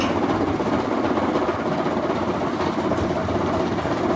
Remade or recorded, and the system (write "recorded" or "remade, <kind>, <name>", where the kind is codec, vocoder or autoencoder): recorded